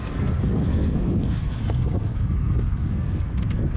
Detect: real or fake fake